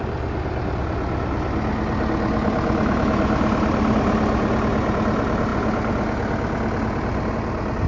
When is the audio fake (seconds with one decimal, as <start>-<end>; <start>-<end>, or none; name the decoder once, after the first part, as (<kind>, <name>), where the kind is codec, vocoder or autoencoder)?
none